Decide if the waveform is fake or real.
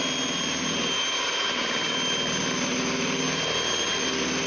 real